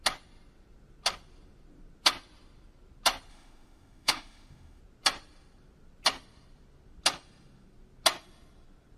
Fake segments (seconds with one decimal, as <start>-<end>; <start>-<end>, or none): 3.3-4.8